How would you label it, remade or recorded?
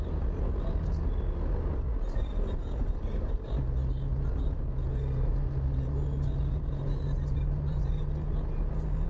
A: recorded